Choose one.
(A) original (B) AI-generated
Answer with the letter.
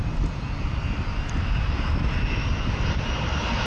A